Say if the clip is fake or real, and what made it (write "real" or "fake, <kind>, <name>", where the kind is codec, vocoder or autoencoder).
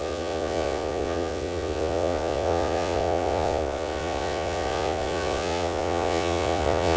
fake, vocoder, Vocos